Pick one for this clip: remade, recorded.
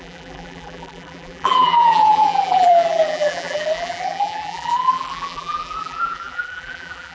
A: remade